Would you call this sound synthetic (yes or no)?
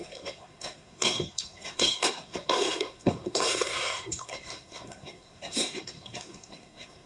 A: yes